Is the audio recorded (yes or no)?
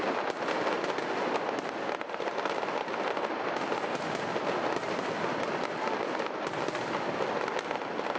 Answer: yes